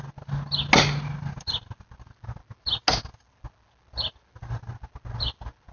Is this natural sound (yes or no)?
yes